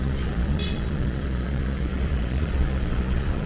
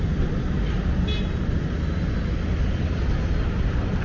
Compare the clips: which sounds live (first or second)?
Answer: second